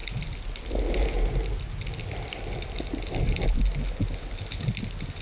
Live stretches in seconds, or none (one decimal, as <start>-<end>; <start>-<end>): 0.0-5.2